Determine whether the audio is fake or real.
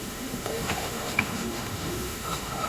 fake